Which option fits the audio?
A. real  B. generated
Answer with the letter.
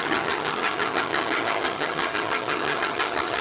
B